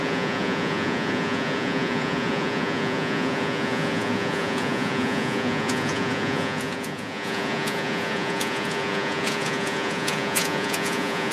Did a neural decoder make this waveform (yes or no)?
yes